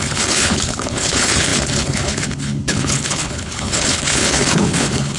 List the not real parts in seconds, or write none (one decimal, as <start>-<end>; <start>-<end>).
0.0-5.2